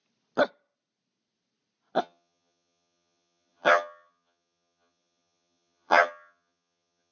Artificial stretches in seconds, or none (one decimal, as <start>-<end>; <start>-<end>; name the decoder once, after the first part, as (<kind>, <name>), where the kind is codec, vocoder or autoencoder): 2.0-7.1 (vocoder, HiFi-GAN)